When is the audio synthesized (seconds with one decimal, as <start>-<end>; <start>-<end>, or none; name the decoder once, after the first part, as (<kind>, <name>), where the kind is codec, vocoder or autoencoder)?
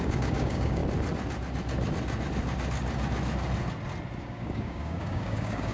0.0-0.8 (codec, DAC); 4.2-5.7